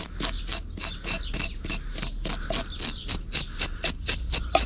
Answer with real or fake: real